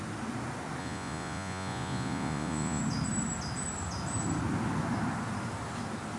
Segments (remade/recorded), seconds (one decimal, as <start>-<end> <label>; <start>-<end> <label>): 0.0-0.8 recorded; 0.8-2.8 remade; 2.8-6.2 recorded